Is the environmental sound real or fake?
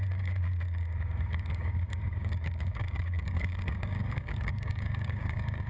fake